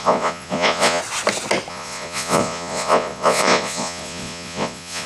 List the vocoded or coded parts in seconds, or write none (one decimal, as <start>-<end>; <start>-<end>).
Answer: 0.0-1.0; 1.7-5.1